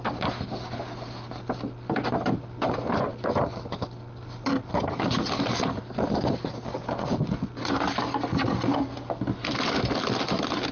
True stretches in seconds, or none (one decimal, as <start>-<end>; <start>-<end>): 0.0-10.7